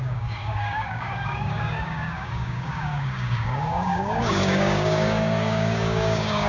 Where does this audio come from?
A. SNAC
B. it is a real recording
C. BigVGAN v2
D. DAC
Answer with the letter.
D